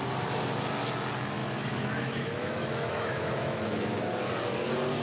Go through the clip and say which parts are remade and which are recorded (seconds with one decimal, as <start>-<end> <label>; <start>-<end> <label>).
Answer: 0.0-1.4 recorded; 1.4-4.0 remade; 4.0-5.0 recorded